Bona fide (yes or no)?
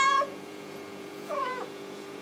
no